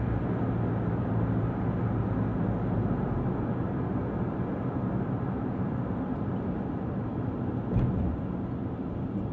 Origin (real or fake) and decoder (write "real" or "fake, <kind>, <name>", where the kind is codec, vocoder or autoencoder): real